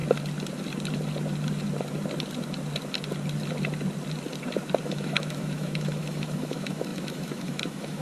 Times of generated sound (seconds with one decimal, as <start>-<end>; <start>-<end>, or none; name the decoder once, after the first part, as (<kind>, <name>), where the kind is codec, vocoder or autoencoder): 4.8-8.0 (autoencoder, DAC-VAE)